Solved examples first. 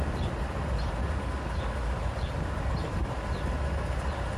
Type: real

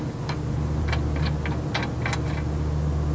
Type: real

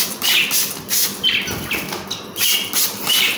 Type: real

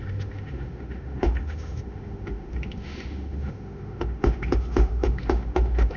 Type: fake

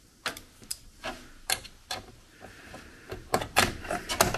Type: real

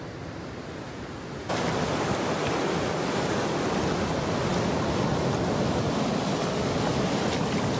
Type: real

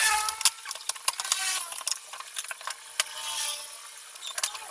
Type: real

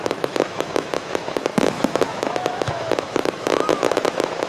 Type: fake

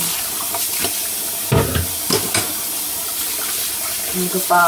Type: real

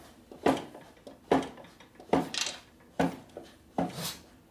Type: real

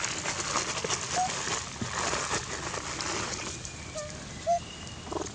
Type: real